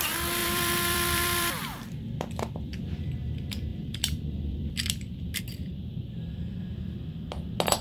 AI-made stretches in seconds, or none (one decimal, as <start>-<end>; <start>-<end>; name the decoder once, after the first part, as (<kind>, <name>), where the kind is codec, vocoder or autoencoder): 0.4-3.1 (vocoder, BigVGAN v2); 3.7-5.4